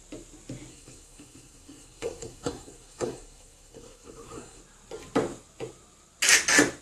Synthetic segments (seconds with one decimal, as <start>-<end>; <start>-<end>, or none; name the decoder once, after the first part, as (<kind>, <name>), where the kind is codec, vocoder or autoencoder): 0.7-4.6 (codec, SNAC)